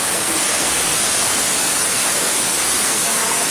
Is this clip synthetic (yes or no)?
yes